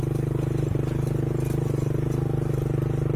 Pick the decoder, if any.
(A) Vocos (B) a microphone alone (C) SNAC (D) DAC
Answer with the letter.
B